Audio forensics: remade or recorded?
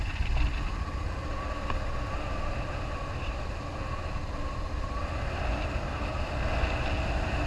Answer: recorded